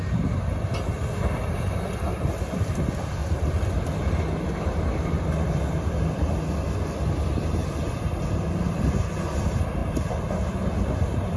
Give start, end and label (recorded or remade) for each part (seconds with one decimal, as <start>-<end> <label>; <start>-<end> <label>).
0.0-2.1 recorded; 2.1-2.8 remade; 2.8-3.2 recorded; 3.2-6.4 remade; 6.4-7.6 recorded; 7.6-8.9 remade; 8.9-9.8 recorded; 9.8-10.3 remade; 10.3-11.4 recorded